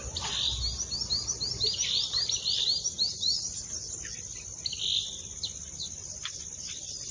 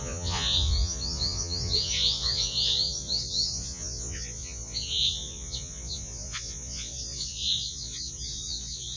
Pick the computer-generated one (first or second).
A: second